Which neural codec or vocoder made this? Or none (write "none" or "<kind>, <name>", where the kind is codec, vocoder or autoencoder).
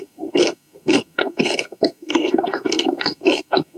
codec, SNAC